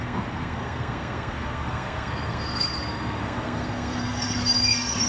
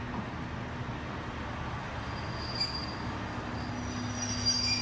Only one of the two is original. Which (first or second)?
second